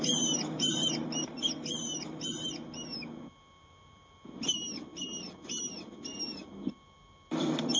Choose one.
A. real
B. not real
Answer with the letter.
A